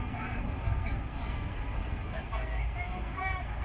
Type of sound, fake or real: fake